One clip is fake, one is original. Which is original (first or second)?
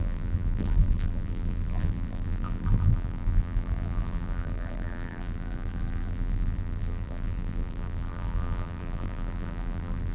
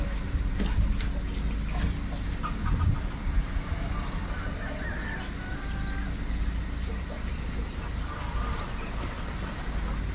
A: second